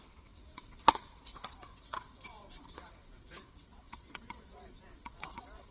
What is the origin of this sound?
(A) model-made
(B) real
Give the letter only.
A